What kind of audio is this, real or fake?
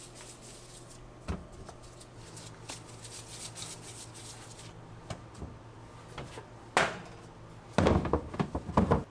real